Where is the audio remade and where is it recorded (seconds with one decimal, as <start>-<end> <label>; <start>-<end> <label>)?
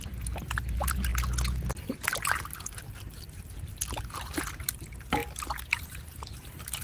0.0-1.1 remade; 1.1-4.5 recorded; 4.5-5.2 remade; 5.2-5.7 recorded; 5.7-6.8 remade